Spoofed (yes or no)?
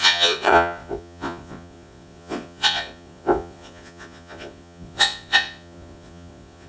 yes